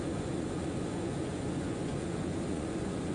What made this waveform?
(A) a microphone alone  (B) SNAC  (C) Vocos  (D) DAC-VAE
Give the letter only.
C